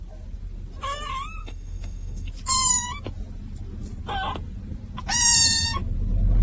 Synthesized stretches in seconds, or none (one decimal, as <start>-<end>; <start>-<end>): 1.4-2.3

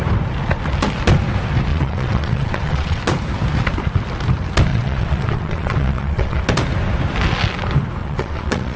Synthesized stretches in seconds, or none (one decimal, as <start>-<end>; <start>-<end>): 1.7-3.0; 4.7-6.4; 8.0-8.8

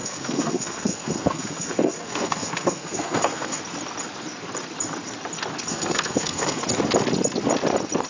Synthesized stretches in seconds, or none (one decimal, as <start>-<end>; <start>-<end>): 0.0-3.6; 5.7-6.6

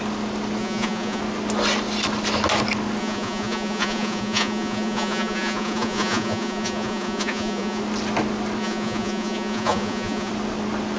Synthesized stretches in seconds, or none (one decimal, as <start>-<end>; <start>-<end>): 0.6-1.2; 3.0-7.8; 8.6-10.3